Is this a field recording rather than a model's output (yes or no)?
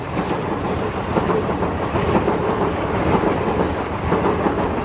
no